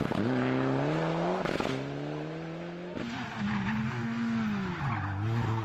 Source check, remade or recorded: recorded